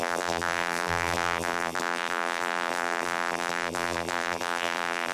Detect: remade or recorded remade